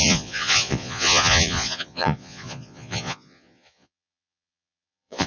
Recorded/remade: remade